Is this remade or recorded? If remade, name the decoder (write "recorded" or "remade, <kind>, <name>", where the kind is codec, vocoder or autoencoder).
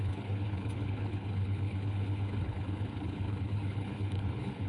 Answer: remade, codec, HILCodec